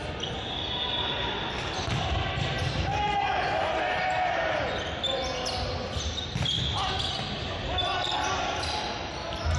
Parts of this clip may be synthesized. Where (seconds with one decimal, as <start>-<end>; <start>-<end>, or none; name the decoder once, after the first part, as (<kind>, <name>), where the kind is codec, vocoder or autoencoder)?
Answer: none